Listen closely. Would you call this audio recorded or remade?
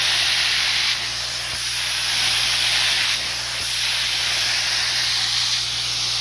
recorded